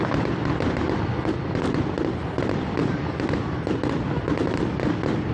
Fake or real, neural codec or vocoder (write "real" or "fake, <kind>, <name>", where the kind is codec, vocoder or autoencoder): fake, vocoder, BigVGAN v2